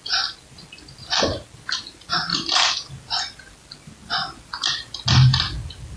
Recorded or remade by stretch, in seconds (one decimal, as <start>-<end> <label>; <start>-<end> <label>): 0.0-6.0 recorded